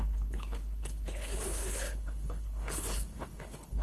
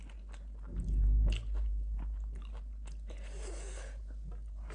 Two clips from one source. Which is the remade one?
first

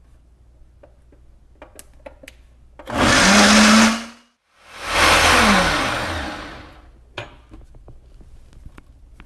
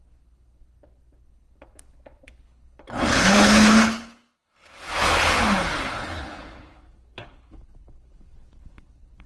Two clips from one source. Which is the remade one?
second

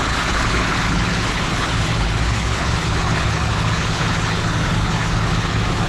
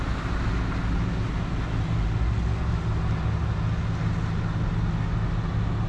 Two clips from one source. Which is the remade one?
first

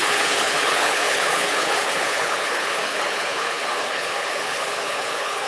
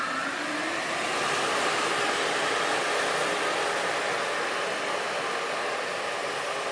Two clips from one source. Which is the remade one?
first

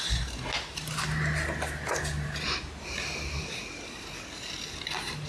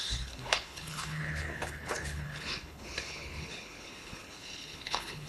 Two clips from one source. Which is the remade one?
second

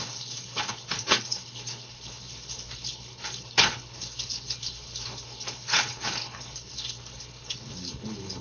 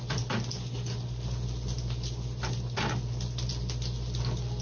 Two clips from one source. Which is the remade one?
first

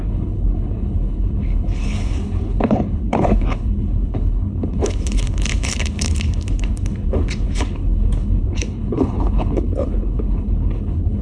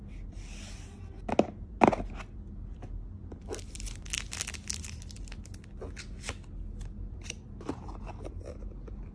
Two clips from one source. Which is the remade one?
first